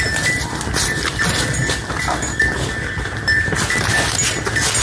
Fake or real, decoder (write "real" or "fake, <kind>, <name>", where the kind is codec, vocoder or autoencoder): real